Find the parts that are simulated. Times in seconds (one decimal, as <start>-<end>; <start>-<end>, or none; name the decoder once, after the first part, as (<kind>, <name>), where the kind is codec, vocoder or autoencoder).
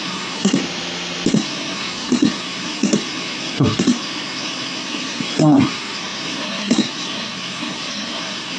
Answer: 0.0-0.6 (codec, SNAC); 1.3-8.6